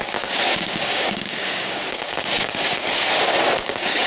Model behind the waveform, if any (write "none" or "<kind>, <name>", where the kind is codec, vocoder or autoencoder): codec, DAC